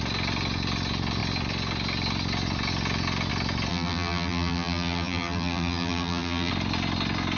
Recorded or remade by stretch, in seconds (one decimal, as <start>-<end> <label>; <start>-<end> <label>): 0.0-3.7 recorded; 3.7-6.5 remade; 6.5-7.4 recorded